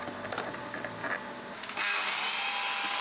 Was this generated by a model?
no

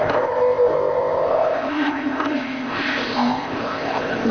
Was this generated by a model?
yes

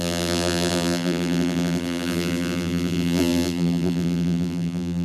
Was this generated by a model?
yes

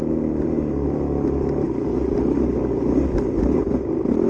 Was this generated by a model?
no